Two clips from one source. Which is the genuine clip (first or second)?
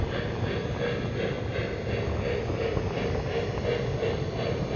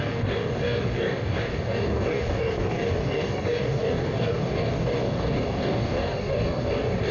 first